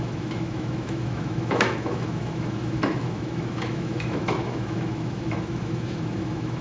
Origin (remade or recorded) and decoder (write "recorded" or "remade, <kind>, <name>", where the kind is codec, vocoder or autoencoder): remade, autoencoder, DAC-VAE